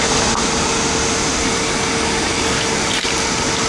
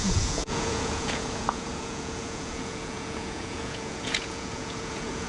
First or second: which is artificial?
second